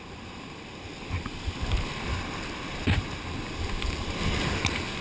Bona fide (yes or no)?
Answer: yes